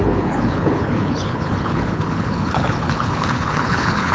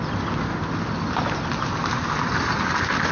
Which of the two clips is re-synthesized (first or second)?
first